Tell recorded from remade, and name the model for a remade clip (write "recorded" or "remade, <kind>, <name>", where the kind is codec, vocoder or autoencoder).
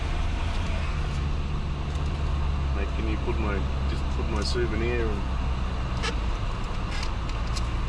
recorded